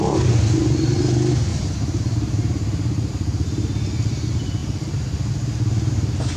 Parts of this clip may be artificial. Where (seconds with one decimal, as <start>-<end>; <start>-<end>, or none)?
1.5-3.1